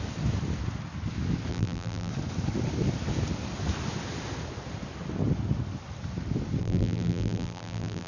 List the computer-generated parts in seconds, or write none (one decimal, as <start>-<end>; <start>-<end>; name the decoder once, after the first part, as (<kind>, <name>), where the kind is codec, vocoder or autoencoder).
1.5-2.1 (vocoder, BigVGAN v2); 6.6-8.1